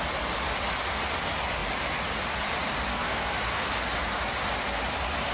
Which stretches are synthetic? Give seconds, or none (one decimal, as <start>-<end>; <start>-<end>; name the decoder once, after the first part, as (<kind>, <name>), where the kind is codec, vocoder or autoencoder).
2.9-3.7 (codec, SNAC)